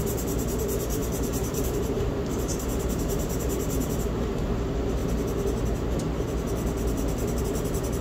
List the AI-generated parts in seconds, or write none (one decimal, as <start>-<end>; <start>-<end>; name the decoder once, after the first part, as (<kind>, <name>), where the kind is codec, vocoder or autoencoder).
1.0-4.6 (vocoder, BigVGAN v2)